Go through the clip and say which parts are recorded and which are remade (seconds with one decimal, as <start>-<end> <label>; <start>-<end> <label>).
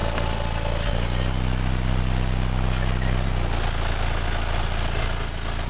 0.0-5.7 recorded